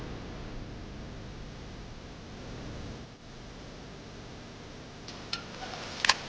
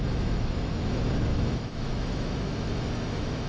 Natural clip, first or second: first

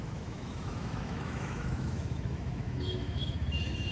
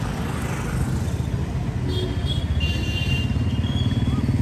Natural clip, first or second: second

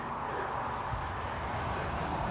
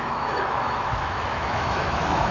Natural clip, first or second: first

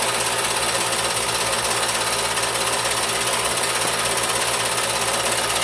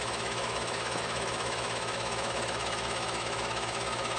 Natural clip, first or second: first